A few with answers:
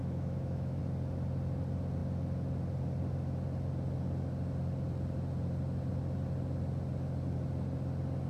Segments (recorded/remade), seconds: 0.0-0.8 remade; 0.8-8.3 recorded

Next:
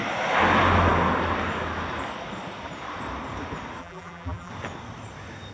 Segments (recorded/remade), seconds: 0.0-3.8 recorded; 3.8-4.5 remade; 4.5-5.5 recorded

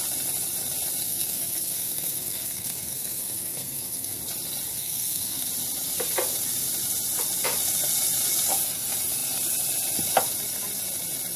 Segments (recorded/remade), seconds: 0.0-1.0 recorded; 1.0-4.2 remade; 4.2-4.7 recorded; 4.7-5.5 remade; 5.5-11.4 recorded

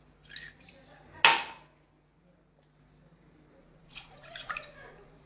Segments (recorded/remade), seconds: 0.0-3.6 recorded; 3.6-5.3 remade

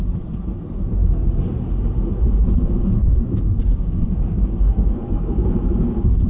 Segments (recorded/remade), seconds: 0.0-3.0 recorded; 3.0-6.3 remade

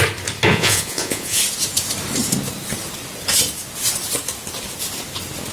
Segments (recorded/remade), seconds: 0.0-0.5 recorded; 0.5-1.4 remade; 1.4-5.5 recorded

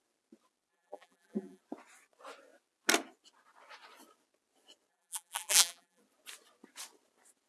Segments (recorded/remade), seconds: 0.0-0.7 recorded; 0.7-1.6 remade; 1.6-4.9 recorded; 4.9-6.0 remade; 6.0-7.5 recorded

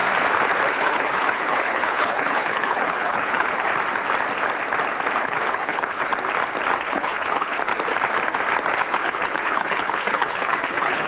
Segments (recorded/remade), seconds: 0.0-0.7 recorded; 0.7-3.7 remade; 3.7-5.2 recorded; 5.2-6.1 remade; 6.1-6.8 recorded; 6.8-7.7 remade; 7.7-8.8 recorded; 8.8-11.1 remade